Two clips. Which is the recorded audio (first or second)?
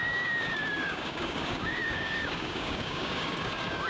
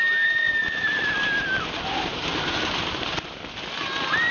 second